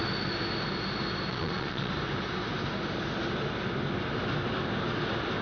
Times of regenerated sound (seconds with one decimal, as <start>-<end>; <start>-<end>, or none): 1.3-1.9